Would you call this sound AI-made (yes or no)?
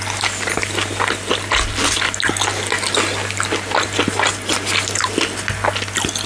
no